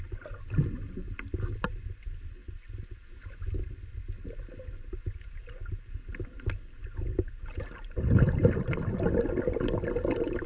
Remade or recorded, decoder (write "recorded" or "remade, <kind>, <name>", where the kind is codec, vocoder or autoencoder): recorded